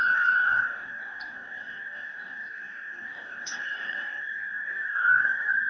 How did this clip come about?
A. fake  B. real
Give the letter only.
A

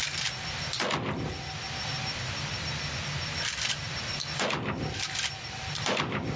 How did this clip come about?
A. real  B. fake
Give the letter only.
A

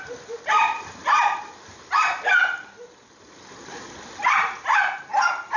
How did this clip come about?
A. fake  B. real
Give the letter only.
B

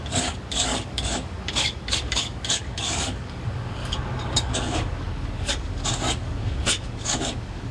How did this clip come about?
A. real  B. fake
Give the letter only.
B